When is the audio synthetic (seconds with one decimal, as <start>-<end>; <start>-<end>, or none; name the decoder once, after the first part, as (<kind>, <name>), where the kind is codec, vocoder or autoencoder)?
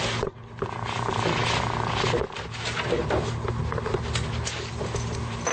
none